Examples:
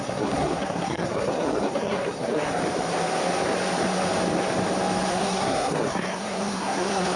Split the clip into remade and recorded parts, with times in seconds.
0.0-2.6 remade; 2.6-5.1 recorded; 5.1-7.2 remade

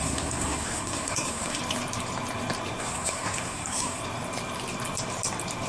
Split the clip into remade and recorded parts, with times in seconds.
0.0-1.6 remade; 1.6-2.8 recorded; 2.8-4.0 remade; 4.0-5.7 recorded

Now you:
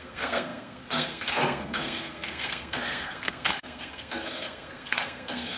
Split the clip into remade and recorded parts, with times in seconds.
0.0-5.6 remade